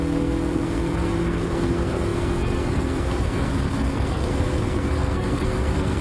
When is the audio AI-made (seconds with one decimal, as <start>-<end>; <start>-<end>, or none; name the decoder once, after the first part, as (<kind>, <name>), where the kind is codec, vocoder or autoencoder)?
0.0-6.0 (codec, SNAC)